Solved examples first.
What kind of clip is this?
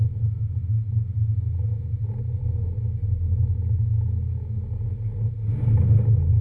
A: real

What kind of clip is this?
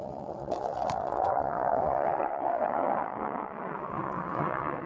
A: fake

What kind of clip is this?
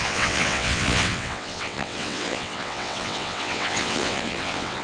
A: fake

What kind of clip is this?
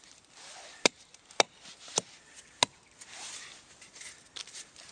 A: real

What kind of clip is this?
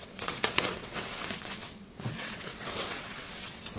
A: fake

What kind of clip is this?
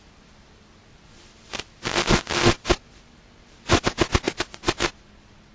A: real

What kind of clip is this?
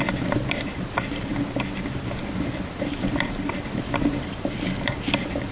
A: real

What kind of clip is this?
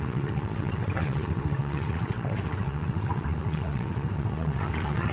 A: fake